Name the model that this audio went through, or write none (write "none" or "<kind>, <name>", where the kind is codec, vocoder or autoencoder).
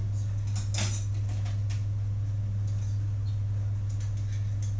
none